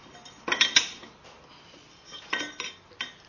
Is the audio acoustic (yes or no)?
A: yes